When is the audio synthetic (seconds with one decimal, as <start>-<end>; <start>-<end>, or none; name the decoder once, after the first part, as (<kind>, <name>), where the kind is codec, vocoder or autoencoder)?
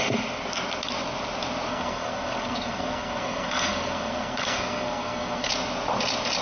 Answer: 1.7-5.5 (codec, SNAC)